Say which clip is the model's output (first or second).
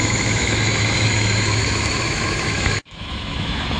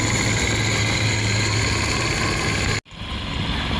first